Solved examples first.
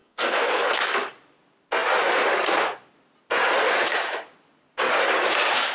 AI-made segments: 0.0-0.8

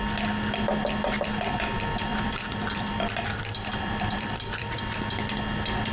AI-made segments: 2.1-4.8

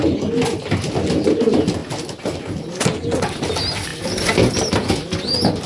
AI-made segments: none

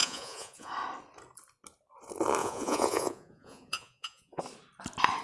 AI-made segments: 0.0-0.7; 2.4-4.4

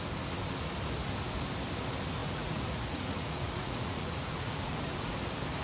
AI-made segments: 2.2-5.1

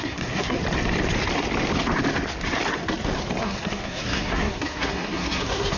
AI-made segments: 0.0-0.6; 3.4-5.8

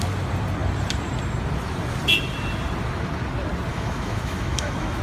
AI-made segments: 3.7-5.0